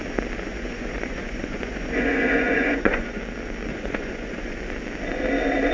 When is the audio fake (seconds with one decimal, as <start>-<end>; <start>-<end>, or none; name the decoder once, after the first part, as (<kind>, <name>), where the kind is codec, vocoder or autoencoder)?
0.5-3.2 (vocoder, Vocos); 3.7-4.6